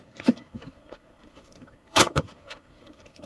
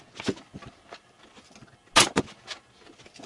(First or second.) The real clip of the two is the second